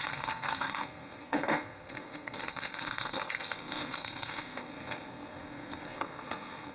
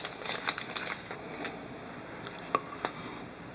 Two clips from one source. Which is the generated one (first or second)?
first